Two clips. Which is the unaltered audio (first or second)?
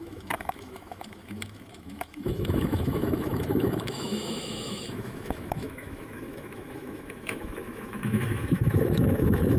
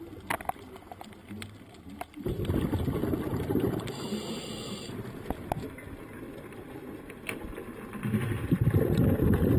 second